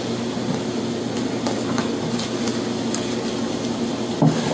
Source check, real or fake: real